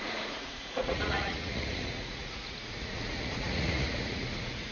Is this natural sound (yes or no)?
no